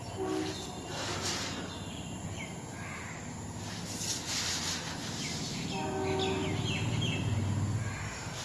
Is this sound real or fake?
real